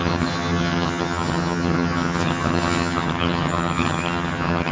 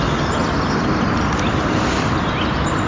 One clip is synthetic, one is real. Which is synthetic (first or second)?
first